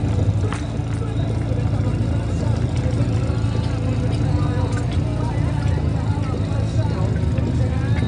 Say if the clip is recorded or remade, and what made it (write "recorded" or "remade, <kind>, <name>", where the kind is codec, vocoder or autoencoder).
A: recorded